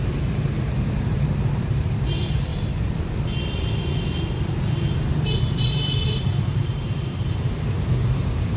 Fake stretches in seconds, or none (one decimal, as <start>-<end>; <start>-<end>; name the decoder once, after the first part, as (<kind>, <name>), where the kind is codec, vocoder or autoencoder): 0.0-2.5 (vocoder, BigVGAN v2); 5.1-8.6